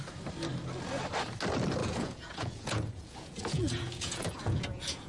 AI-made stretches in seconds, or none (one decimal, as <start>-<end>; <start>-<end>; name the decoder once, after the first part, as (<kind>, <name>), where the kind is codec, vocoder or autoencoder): 1.8-5.1 (vocoder, Vocos)